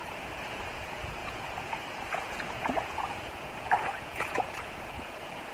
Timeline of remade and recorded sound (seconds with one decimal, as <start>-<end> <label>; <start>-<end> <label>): 0.0-5.5 remade